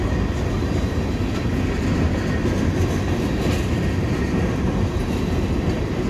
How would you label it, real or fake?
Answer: real